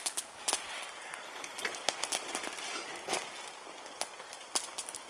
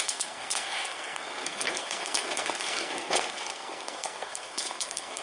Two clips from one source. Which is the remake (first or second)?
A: second